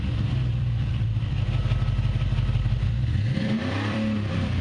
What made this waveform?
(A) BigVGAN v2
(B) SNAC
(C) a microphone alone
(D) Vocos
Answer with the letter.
A